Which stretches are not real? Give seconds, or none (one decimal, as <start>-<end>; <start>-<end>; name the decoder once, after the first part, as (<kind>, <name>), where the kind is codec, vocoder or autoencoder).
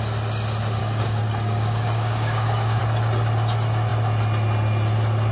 0.8-2.8 (codec, DAC)